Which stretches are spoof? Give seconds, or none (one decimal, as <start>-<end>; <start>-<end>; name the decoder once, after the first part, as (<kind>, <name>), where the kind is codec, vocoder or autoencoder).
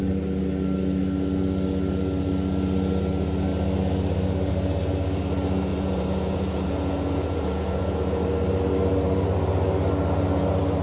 5.7-8.2 (vocoder, Vocos)